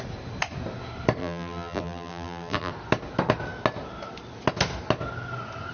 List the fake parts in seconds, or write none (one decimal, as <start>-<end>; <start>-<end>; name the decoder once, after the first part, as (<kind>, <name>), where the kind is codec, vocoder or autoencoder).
1.2-2.7 (vocoder, BigVGAN v2)